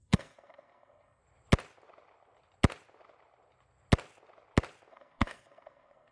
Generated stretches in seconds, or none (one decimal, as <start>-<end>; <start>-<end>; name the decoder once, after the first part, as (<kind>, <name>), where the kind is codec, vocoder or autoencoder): 0.0-1.2 (codec, SNAC); 4.9-6.1